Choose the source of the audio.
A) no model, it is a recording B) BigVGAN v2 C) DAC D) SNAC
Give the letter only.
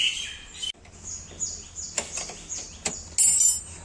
A